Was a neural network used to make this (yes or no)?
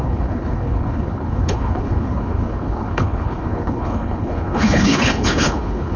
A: yes